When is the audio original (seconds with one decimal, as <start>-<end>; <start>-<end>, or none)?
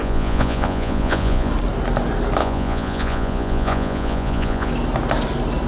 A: 1.5-2.4; 4.7-5.7